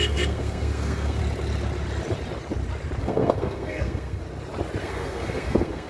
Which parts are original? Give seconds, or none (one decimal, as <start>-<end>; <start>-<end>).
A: 1.2-3.0; 4.2-4.8